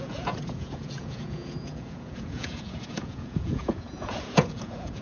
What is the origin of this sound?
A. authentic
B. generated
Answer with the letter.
B